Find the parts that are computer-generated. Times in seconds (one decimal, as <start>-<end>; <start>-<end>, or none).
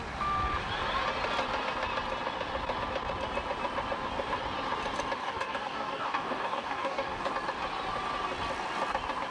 5.2-7.3